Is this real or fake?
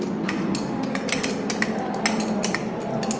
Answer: real